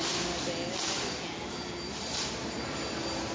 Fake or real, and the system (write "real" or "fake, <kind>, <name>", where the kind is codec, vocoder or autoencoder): real